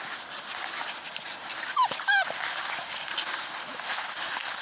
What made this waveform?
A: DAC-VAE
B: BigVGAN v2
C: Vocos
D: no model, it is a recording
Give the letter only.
D